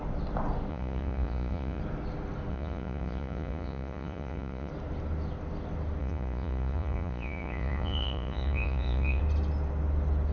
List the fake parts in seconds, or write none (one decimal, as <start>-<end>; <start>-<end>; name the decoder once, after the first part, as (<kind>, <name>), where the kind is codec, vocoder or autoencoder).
0.7-1.8 (vocoder, Vocos); 2.5-4.7; 6.0-9.2